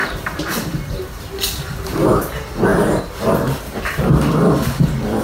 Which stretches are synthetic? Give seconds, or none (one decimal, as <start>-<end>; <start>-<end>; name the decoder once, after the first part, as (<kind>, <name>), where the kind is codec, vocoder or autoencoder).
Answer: 0.0-1.0 (vocoder, BigVGAN v2)